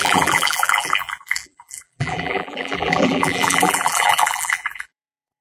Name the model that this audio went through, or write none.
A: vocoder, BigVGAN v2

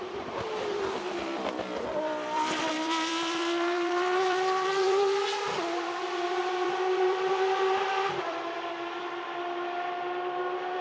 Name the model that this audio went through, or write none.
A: vocoder, BigVGAN v2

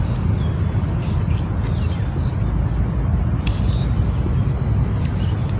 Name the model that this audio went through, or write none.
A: none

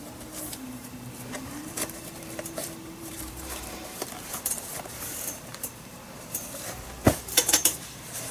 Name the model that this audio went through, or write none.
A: vocoder, BigVGAN v2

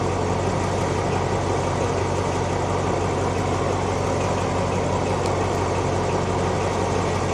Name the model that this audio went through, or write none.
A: none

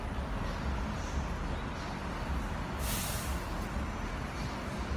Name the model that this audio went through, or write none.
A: none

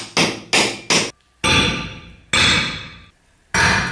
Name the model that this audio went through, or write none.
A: none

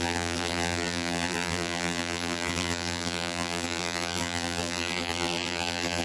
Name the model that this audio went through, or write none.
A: vocoder, BigVGAN v2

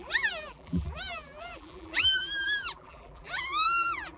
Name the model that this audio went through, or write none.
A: vocoder, BigVGAN v2